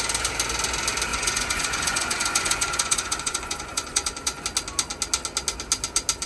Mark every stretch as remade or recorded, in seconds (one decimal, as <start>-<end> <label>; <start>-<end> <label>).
0.0-1.1 recorded; 1.1-4.4 remade; 4.4-6.3 recorded